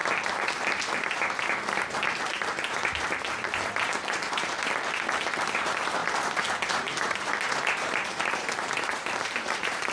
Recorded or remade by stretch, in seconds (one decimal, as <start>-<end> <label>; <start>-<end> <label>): 0.0-6.0 remade; 6.0-6.7 recorded; 6.7-9.9 remade